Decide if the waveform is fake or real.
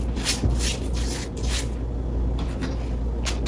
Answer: real